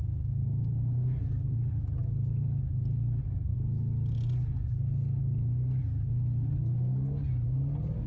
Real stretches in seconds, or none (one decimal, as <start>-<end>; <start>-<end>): 0.0-8.1